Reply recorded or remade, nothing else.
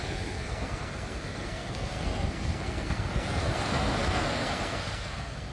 remade